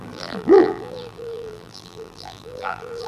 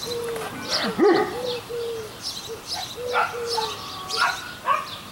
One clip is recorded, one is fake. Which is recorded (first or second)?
second